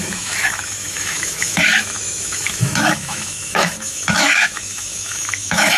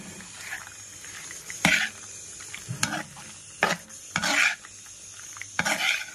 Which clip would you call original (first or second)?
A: second